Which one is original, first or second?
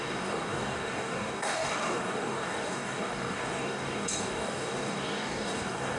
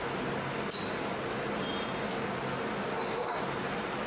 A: second